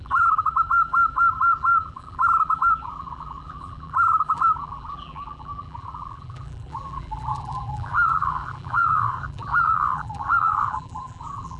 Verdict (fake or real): fake